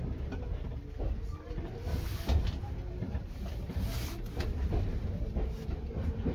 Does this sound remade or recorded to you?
recorded